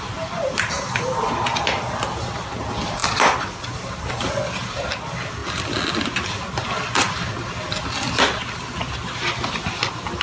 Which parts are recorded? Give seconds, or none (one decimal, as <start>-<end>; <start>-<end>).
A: 0.0-10.2